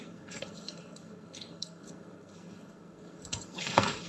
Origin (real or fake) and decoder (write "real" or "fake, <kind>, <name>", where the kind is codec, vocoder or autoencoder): fake, codec, SNAC